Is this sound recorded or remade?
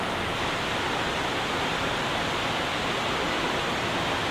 recorded